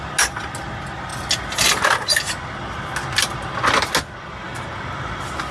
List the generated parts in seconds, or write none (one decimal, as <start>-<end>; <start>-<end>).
none